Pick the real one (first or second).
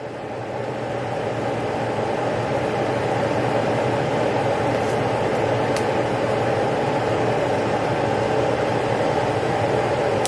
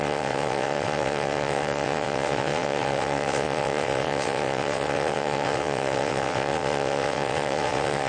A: first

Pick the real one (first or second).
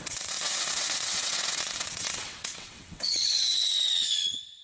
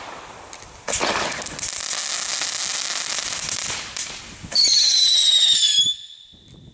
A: second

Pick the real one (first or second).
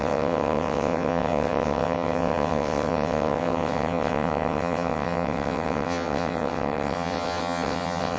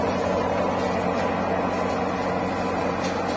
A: second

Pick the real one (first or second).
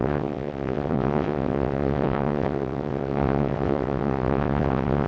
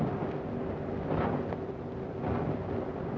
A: second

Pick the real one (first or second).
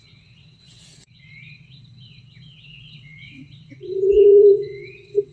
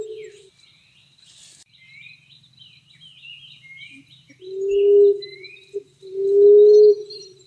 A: second